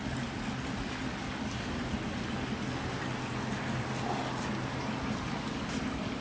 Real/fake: real